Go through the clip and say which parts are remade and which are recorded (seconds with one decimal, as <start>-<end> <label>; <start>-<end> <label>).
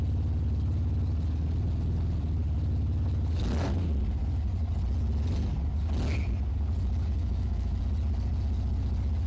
0.0-7.2 recorded; 7.2-7.8 remade; 7.8-9.3 recorded